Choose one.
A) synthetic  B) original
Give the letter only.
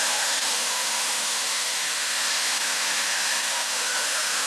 A